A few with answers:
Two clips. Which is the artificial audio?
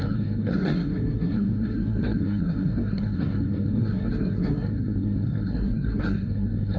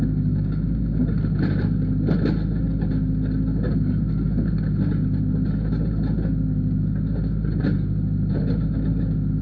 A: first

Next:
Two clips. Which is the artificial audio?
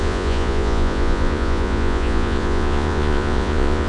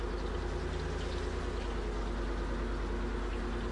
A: first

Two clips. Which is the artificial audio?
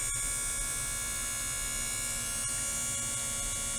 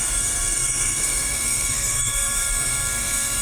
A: second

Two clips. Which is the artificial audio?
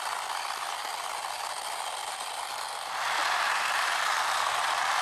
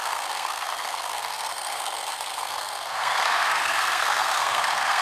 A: second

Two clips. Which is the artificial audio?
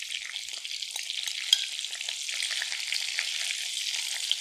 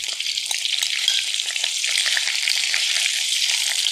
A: second